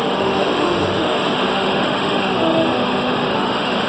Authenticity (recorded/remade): remade